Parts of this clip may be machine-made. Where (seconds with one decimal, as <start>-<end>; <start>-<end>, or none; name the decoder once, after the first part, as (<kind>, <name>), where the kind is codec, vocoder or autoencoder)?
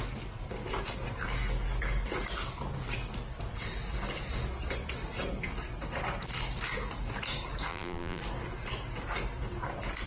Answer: 7.7-8.2 (vocoder, BigVGAN v2)